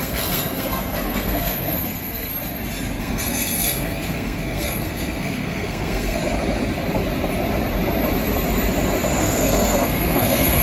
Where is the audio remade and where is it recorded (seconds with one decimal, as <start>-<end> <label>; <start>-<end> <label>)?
0.0-2.3 remade; 2.3-3.0 recorded; 3.0-6.2 remade; 6.2-9.2 recorded; 9.2-10.6 remade